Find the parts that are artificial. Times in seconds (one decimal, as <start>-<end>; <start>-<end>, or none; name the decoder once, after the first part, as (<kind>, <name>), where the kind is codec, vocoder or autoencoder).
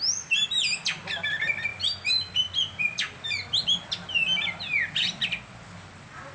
none